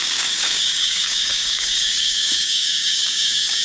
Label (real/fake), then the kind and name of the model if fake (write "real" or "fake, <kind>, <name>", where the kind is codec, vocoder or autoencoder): fake, codec, DAC